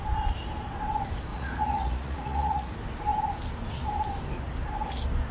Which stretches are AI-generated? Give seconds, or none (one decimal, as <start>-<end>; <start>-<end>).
1.3-2.7

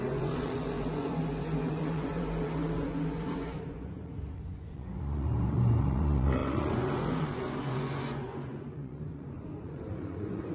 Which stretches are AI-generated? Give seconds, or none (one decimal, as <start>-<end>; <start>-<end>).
0.0-10.5

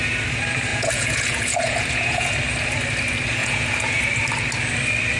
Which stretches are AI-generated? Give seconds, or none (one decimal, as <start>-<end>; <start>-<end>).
0.7-2.3; 3.4-4.0

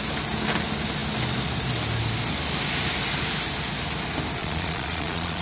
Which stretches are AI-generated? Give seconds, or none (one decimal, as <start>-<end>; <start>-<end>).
4.4-5.4

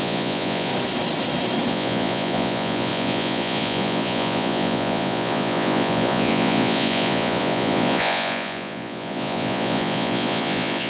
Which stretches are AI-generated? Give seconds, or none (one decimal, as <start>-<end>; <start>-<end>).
0.0-0.7; 1.7-10.9

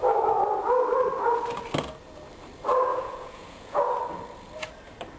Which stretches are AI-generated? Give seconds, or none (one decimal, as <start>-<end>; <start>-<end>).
2.9-3.8

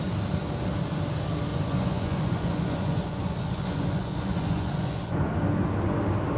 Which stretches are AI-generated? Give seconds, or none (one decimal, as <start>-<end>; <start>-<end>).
1.5-5.3

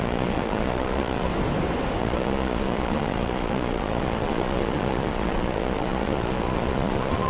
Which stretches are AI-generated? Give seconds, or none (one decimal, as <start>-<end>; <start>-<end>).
0.0-1.3; 2.0-7.3